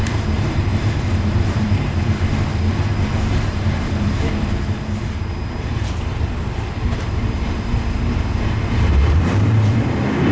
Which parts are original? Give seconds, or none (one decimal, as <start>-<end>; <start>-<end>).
none